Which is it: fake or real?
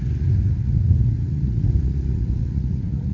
fake